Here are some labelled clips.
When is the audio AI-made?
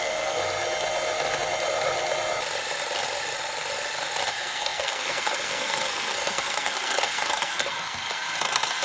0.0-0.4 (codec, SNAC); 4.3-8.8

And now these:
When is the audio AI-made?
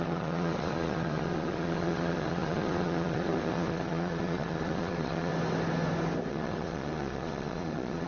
0.0-5.3 (vocoder, Vocos); 6.3-8.1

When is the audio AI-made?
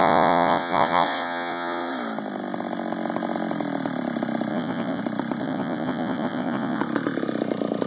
0.0-1.9 (vocoder, Vocos); 4.5-5.0; 5.4-6.8